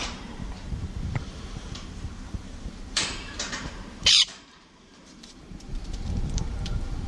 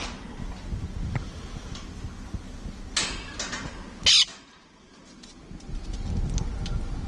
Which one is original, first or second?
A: second